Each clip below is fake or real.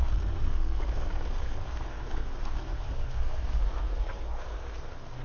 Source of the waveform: fake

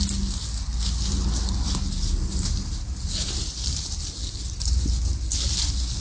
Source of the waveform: real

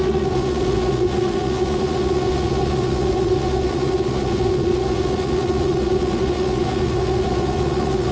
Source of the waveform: fake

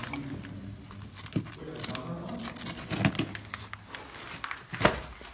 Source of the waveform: real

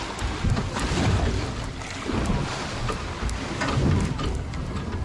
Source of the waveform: real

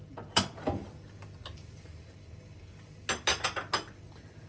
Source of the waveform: real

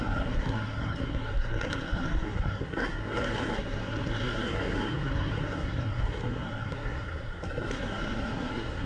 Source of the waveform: fake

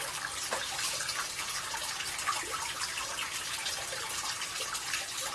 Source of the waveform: fake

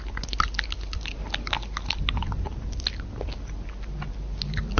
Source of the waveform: real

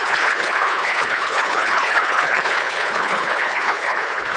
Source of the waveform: fake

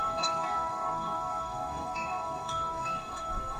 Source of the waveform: fake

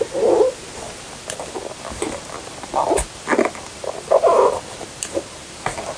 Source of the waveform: real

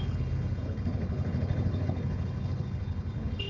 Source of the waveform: fake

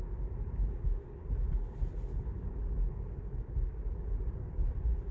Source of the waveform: real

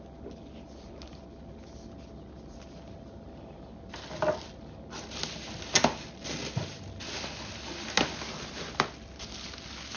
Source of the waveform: real